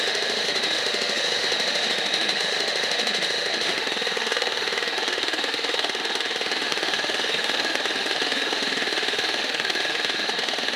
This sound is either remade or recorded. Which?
remade